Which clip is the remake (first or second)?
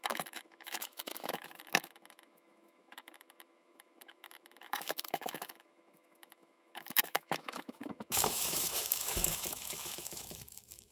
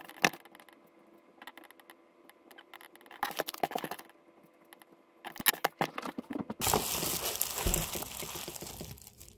first